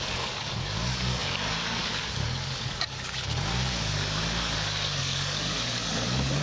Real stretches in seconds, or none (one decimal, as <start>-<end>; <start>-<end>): none